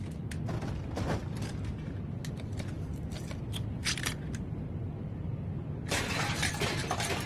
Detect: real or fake real